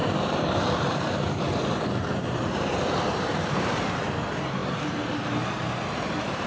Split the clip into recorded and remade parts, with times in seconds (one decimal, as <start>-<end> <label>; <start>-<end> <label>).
0.0-6.5 remade